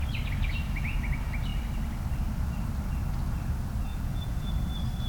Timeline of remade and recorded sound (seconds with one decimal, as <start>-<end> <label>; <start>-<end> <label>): 0.0-3.9 recorded; 3.9-4.5 remade; 4.5-5.1 recorded